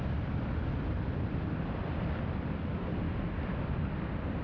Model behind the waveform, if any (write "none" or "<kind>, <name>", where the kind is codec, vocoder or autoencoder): none